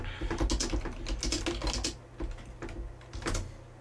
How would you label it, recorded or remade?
recorded